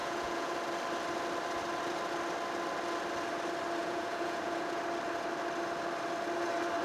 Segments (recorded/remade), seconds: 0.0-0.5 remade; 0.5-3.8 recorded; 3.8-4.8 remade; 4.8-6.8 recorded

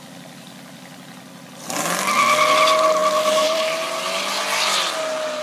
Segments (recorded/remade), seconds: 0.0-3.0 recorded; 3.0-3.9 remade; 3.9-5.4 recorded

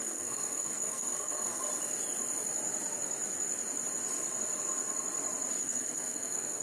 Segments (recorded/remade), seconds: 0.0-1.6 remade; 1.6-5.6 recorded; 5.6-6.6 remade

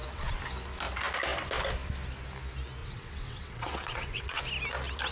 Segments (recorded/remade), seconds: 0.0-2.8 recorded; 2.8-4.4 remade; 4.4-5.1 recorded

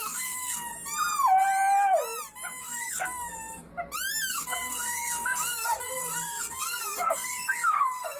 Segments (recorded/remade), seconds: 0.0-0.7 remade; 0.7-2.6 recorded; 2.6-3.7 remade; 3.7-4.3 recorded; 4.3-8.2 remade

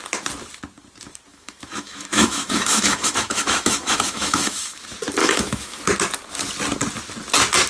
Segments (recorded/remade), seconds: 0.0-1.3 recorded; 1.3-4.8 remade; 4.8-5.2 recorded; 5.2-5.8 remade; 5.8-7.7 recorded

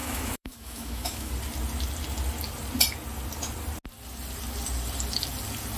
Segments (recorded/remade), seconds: 0.0-1.3 remade; 1.3-5.8 recorded